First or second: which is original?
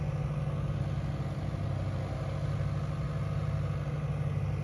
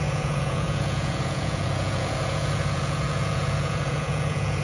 first